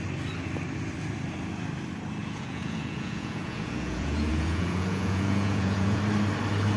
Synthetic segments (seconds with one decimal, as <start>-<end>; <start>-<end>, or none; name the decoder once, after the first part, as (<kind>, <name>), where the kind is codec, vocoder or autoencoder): 2.2-6.0 (vocoder, Vocos)